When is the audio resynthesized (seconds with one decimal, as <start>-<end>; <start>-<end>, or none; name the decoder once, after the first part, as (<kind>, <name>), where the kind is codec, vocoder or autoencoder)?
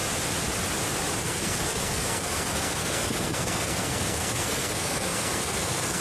1.2-6.0 (codec, SNAC)